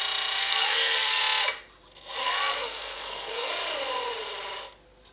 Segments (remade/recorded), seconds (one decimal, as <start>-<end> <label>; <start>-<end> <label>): 0.0-0.4 recorded; 0.4-1.2 remade; 1.2-2.2 recorded; 2.2-3.5 remade; 3.5-5.1 recorded